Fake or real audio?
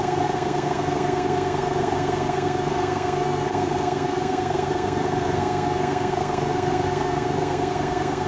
fake